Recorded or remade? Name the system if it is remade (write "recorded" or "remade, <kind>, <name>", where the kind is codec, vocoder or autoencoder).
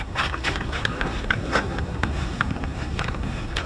remade, codec, SNAC